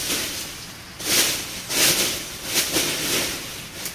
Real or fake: real